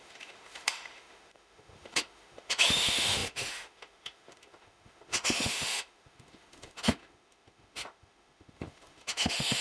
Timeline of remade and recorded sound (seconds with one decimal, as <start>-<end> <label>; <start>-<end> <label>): 0.0-9.6 remade